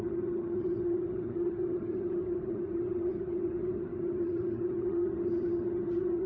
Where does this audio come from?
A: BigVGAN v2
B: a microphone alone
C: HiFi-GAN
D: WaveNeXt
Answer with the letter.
C